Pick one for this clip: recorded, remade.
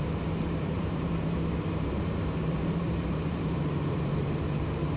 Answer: remade